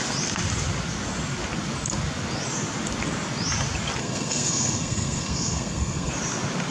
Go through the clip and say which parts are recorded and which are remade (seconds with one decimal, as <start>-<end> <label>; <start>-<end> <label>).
0.0-4.0 recorded; 4.0-6.1 remade; 6.1-6.7 recorded